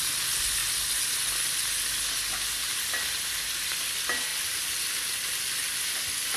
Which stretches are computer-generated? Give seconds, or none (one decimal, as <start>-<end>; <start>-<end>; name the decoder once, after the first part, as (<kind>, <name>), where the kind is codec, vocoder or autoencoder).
none